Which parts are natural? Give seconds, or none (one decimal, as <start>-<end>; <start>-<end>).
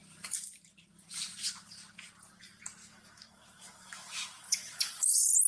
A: 0.0-2.8; 4.9-5.5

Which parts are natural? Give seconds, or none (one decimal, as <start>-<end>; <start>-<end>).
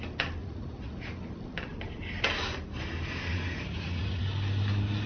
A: 0.0-0.4; 1.0-3.3; 4.2-5.1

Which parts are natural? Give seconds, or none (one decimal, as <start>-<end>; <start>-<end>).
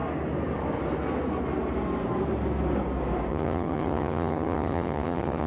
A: 0.0-3.3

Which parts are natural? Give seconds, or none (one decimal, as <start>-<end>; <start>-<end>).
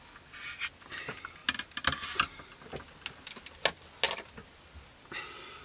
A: 0.0-5.6